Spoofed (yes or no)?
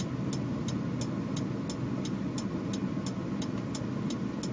no